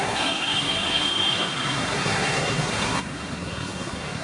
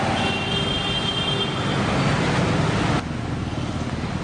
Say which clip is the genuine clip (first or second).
second